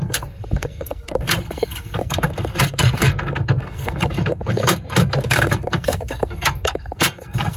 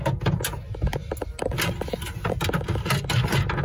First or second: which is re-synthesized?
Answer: first